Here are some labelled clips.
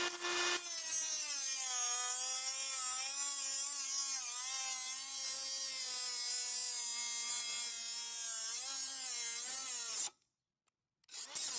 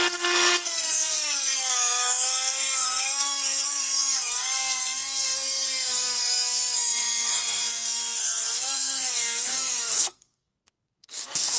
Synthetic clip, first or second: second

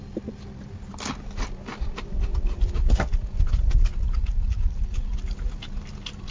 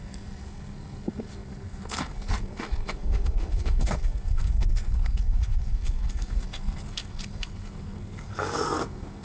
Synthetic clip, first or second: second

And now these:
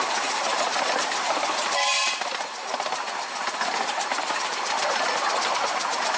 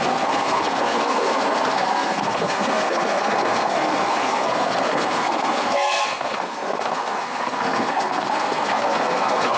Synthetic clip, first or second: second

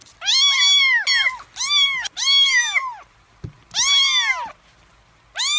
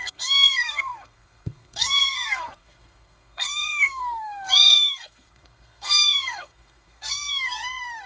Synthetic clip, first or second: second